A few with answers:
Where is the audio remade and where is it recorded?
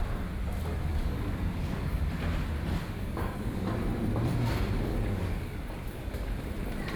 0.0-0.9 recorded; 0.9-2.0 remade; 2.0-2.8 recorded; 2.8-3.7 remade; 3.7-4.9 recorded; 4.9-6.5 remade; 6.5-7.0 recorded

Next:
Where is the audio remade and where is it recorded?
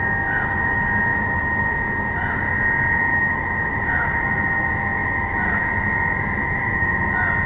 0.0-3.1 recorded; 3.1-4.2 remade; 4.2-5.0 recorded; 5.0-5.7 remade; 5.7-6.4 recorded; 6.4-6.9 remade; 6.9-7.5 recorded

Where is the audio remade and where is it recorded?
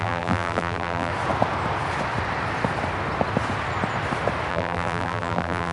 0.0-1.1 remade; 1.1-4.5 recorded; 4.5-5.7 remade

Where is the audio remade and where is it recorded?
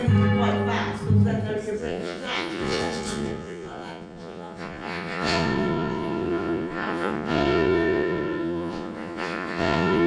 0.0-1.8 recorded; 1.8-10.1 remade